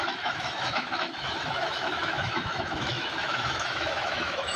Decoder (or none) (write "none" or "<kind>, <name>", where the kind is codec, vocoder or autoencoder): autoencoder, DAC-VAE